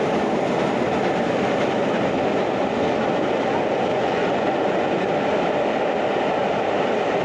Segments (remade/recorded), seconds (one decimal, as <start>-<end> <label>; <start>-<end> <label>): 0.0-3.9 recorded; 3.9-5.1 remade; 5.1-7.2 recorded